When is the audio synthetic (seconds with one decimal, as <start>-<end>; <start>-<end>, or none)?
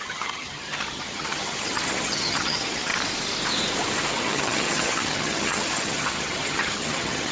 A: 0.0-2.9; 4.1-7.3